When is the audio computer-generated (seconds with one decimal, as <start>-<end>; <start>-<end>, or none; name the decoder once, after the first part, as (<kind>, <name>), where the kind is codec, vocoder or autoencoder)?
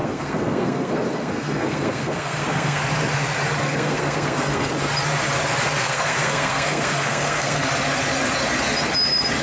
0.0-2.8 (codec, SNAC); 3.6-4.7; 5.8-7.7